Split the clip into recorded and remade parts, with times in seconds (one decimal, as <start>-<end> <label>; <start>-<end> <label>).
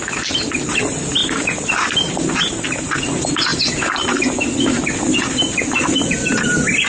0.0-6.9 recorded